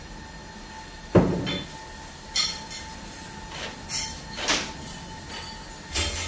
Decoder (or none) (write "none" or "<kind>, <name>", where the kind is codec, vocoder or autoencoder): none